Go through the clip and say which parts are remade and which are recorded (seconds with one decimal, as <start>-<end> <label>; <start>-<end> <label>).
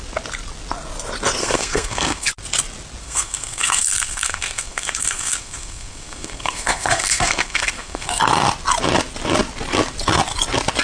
0.0-1.4 recorded; 1.4-2.3 remade; 2.3-3.0 recorded; 3.0-8.2 remade; 8.2-10.8 recorded